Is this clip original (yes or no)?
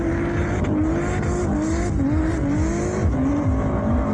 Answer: yes